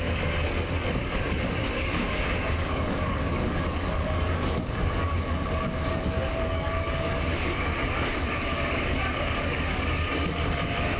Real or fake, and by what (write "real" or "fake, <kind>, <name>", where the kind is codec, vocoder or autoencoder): fake, codec, DAC